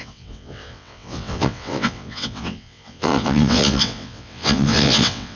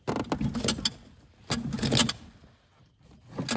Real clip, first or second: second